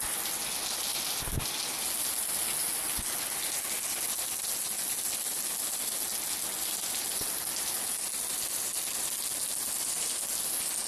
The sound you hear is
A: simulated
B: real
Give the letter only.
B